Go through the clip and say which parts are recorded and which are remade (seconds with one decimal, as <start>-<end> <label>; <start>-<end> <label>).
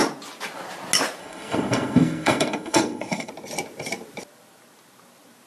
0.0-1.2 recorded; 1.2-3.3 remade; 3.3-5.5 recorded